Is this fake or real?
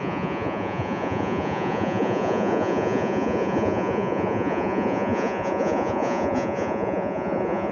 fake